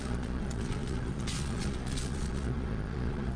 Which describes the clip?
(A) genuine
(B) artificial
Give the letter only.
B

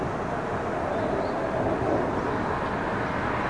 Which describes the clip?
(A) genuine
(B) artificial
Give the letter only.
A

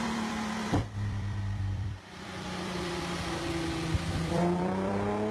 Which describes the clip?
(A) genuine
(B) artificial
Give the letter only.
B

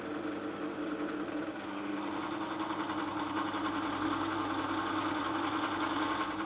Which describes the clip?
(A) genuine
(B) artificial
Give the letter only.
A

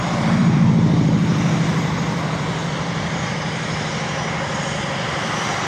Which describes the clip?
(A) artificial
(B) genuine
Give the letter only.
A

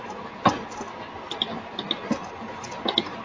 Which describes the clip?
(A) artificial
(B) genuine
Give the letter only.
B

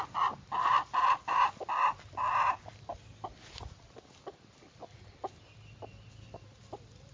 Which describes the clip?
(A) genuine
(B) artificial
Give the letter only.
A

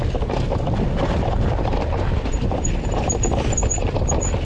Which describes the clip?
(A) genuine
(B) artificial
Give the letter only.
A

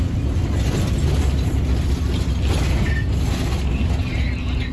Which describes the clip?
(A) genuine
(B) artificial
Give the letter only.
A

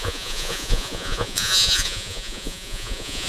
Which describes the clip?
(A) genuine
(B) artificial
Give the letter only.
B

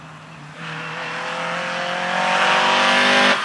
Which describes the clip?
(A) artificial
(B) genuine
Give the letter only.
B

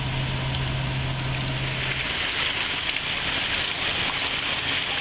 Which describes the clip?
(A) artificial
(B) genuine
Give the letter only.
B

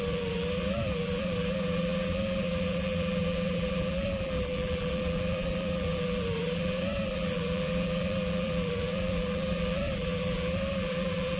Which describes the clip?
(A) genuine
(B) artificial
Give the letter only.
B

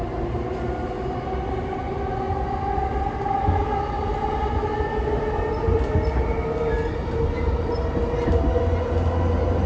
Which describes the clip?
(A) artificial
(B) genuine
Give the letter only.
B